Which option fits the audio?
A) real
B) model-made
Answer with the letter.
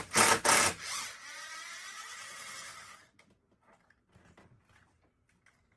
A